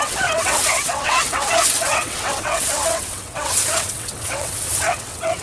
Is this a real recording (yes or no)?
no